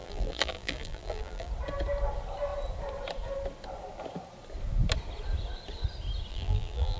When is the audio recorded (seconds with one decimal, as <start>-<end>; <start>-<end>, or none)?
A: 1.5-6.3